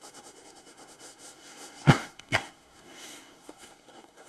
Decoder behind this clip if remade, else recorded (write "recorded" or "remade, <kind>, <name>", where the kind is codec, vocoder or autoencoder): remade, codec, SNAC